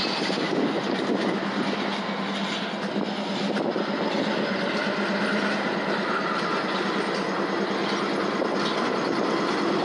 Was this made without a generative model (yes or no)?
yes